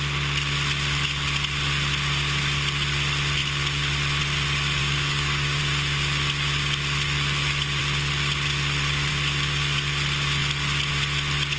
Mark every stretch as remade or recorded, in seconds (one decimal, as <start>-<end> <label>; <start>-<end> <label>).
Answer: 0.0-4.8 recorded; 4.8-5.6 remade; 5.6-11.6 recorded